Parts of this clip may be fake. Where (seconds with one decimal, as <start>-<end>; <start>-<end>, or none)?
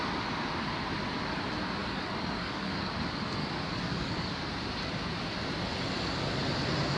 1.8-2.9; 3.4-4.3